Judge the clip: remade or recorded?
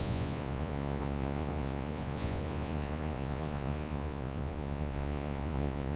remade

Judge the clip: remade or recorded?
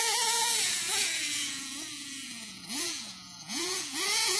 remade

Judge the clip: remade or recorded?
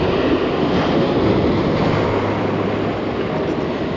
recorded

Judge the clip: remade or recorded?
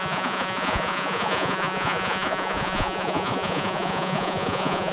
remade